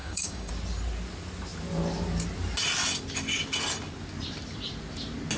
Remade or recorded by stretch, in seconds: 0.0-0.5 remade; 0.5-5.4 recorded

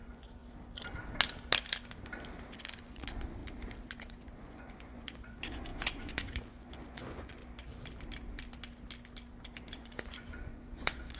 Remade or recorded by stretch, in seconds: 0.0-0.4 remade; 0.4-2.5 recorded; 2.5-3.4 remade; 3.4-3.9 recorded; 3.9-7.4 remade; 7.4-9.6 recorded; 9.6-11.2 remade

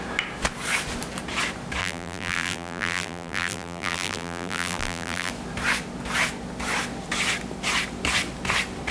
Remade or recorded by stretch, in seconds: 0.0-1.8 recorded; 1.8-5.3 remade; 5.3-8.9 recorded

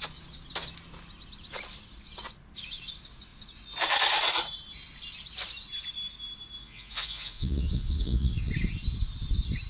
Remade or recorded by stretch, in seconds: 0.0-6.6 recorded; 6.6-8.5 remade; 8.5-9.7 recorded

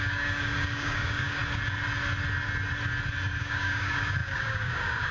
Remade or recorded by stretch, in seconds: 0.0-1.4 remade; 1.4-3.4 recorded; 3.4-5.1 remade

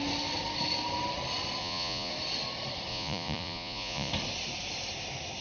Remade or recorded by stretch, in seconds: 0.0-1.6 recorded; 1.6-2.1 remade; 2.1-2.9 recorded; 2.9-4.1 remade; 4.1-5.4 recorded

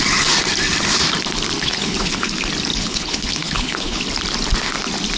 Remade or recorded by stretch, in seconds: 0.0-1.6 recorded; 1.6-2.3 remade; 2.3-2.7 recorded; 2.7-4.0 remade; 4.0-5.2 recorded